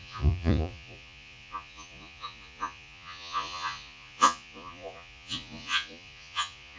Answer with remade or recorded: remade